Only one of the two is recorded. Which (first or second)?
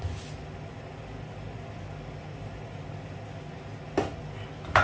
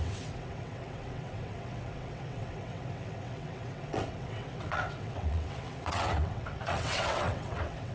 first